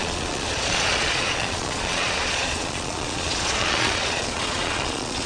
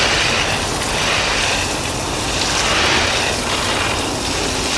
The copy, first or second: first